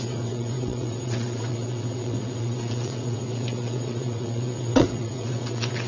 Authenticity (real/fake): fake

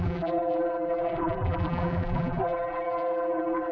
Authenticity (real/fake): fake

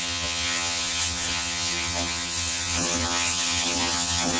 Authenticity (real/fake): fake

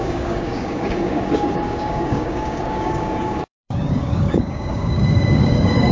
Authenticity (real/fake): fake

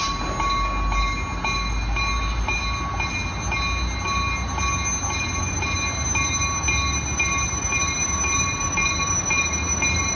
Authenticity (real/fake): real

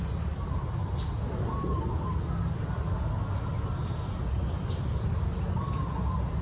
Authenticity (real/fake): real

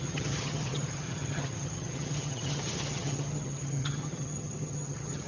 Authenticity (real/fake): fake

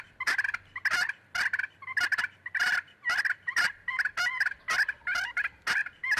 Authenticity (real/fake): real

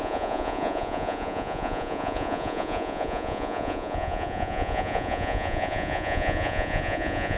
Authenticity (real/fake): fake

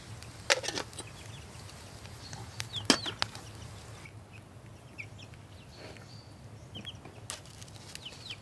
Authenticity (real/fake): real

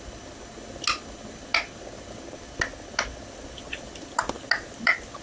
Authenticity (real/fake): real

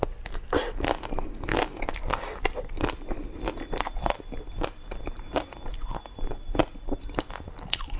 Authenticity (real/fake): real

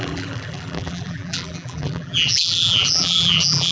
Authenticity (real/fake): fake